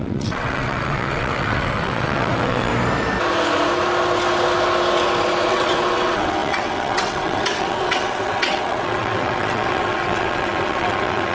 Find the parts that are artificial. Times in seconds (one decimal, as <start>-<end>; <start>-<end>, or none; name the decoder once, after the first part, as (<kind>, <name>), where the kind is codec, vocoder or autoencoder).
0.0-2.7 (vocoder, WaveNeXt); 5.5-11.3